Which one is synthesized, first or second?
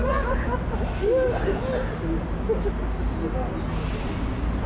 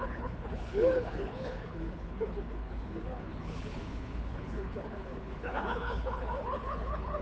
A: second